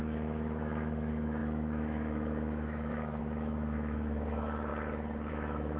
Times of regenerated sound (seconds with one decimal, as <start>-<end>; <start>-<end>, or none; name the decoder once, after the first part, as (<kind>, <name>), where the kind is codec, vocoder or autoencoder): 0.0-4.7 (autoencoder, DAC-VAE); 5.3-5.8